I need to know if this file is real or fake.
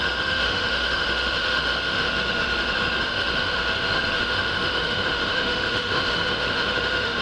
fake